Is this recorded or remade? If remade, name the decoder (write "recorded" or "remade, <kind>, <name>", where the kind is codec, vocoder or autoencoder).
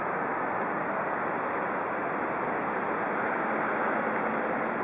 recorded